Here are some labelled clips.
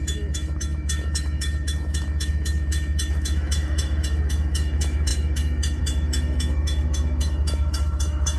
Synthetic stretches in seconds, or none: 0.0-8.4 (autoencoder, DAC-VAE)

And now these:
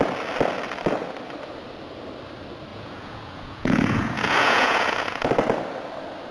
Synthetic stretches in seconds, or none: 2.7-5.3 (vocoder, Vocos)

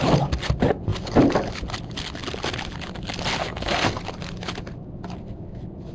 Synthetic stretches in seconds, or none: 3.4-4.0 (codec, SNAC)